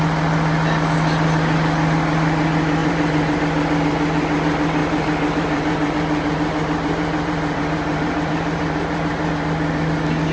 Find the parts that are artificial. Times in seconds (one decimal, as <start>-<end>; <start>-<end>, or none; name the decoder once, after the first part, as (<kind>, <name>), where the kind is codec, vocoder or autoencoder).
2.8-3.4 (vocoder, BigVGAN v2); 4.8-9.3